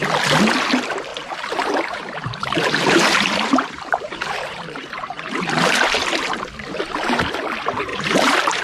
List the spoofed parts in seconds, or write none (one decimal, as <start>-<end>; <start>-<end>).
1.1-5.7; 7.9-8.6